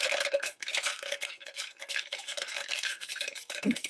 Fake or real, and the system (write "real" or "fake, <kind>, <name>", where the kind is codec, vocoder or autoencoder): fake, codec, SNAC